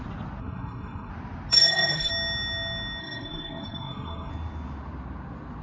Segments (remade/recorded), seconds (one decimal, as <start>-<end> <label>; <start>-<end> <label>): 0.0-0.4 recorded; 0.4-1.1 remade; 1.1-1.5 recorded; 1.5-2.1 remade; 2.1-3.0 recorded; 3.0-4.3 remade; 4.3-5.6 recorded